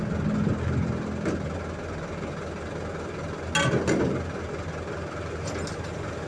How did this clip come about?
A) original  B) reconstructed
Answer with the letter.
A